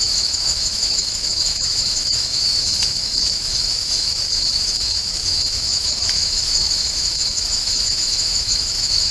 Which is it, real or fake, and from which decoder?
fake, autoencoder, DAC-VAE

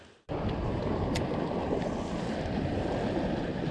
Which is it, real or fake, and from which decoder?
real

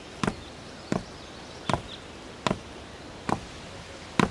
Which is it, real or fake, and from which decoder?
real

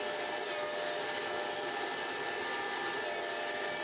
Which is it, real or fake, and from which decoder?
real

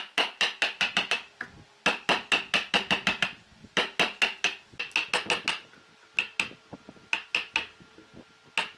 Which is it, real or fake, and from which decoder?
real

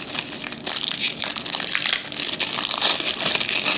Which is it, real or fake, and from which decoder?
real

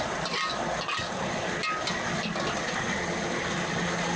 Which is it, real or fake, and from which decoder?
real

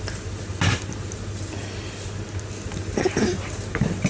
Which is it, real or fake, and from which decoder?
real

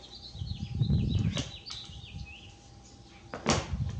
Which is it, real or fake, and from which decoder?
real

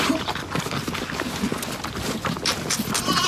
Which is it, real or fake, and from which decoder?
real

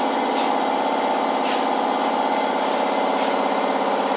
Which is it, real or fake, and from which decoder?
real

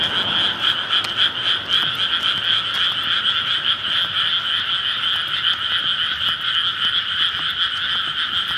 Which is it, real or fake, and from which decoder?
real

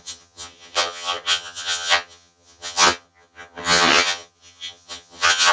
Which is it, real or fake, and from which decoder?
fake, vocoder, HiFi-GAN